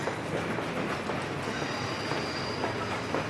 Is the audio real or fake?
real